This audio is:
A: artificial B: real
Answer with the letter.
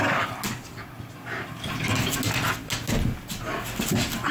B